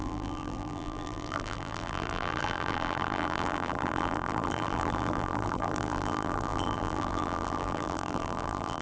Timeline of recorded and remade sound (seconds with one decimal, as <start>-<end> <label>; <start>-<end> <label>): 0.0-8.8 remade